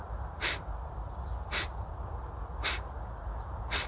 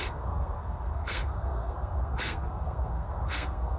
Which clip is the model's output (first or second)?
second